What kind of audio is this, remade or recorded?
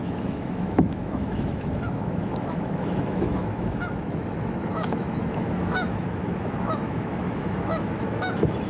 remade